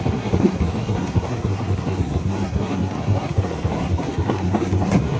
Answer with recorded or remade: remade